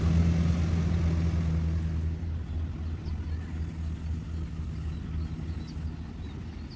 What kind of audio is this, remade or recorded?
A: recorded